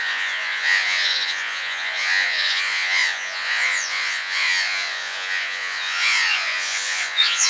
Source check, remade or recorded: remade